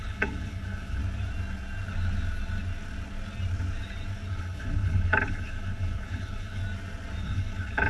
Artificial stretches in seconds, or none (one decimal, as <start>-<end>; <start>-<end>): 0.0-1.0; 4.3-6.6; 7.2-7.9